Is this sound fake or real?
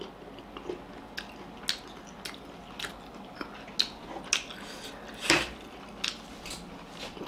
real